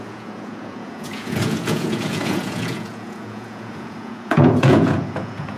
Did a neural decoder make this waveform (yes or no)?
yes